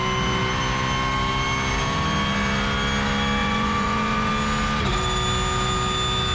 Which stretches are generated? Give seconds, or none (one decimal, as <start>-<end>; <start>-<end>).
3.4-4.3